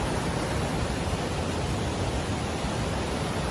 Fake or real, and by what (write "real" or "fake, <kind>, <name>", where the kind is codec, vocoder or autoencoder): fake, vocoder, BigVGAN v2